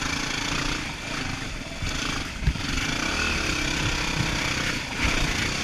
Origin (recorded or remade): recorded